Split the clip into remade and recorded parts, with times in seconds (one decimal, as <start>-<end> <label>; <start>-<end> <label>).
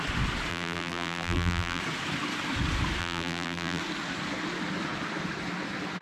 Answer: 0.0-0.5 recorded; 0.5-1.8 remade; 1.8-3.0 recorded; 3.0-3.8 remade; 3.8-6.0 recorded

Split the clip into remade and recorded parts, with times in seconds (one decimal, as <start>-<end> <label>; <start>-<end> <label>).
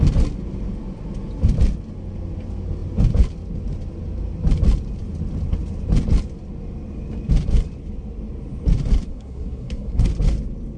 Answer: 0.0-9.1 recorded; 9.1-10.1 remade; 10.1-10.8 recorded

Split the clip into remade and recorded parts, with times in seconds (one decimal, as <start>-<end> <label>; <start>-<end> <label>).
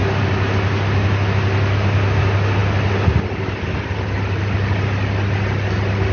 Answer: 0.0-6.1 recorded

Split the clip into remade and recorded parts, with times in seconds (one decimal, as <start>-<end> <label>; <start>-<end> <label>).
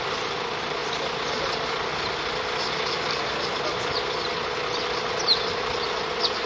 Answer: 0.0-6.5 recorded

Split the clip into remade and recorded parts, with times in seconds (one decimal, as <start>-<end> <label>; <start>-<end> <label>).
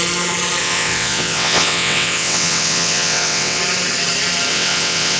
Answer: 0.0-0.6 recorded; 0.6-3.6 remade; 3.6-4.5 recorded; 4.5-5.2 remade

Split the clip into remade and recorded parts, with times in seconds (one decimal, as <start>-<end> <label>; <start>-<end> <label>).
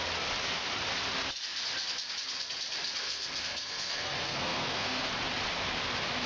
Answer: 0.0-3.0 recorded; 3.0-5.1 remade; 5.1-6.3 recorded